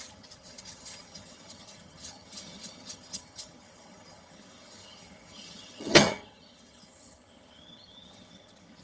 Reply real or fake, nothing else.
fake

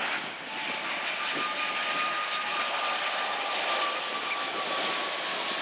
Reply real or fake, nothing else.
real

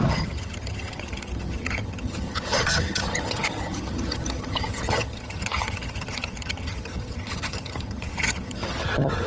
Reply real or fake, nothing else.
fake